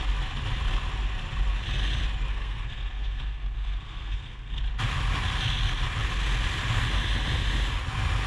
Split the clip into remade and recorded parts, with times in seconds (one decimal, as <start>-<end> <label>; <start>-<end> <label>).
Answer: 0.0-2.3 recorded; 2.3-4.6 remade; 4.6-8.3 recorded